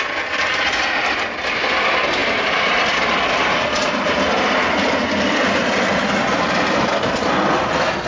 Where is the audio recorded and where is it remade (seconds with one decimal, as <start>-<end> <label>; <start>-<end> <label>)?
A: 0.0-8.1 recorded